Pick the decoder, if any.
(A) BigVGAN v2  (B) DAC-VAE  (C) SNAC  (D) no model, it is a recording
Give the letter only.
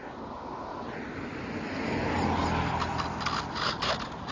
D